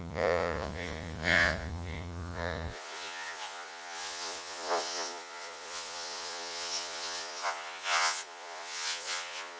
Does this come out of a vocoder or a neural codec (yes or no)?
yes